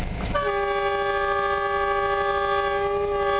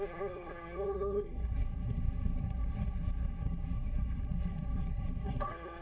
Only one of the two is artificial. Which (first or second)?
second